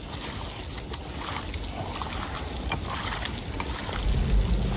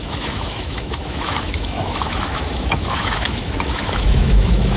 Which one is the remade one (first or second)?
second